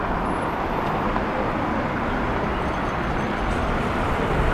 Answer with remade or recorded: recorded